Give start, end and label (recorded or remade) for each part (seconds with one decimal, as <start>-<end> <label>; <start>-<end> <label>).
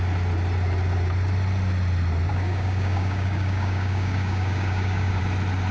0.0-2.3 recorded; 2.3-5.2 remade; 5.2-5.7 recorded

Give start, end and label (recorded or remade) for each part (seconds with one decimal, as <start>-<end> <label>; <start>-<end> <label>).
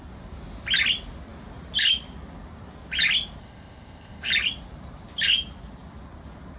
0.0-3.4 recorded; 3.4-4.3 remade; 4.3-6.6 recorded